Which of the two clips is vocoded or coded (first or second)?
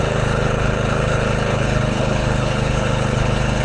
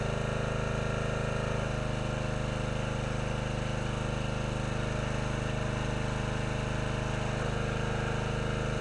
first